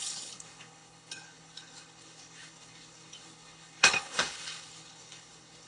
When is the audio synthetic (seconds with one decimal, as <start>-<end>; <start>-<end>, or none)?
0.0-5.7